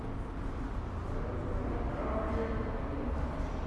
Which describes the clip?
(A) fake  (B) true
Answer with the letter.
B